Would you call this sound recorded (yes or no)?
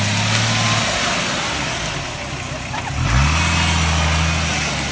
yes